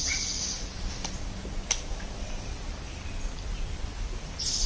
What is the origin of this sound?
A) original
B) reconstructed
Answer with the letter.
A